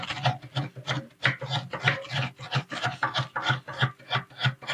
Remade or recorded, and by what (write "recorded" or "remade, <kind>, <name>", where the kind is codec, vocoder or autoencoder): recorded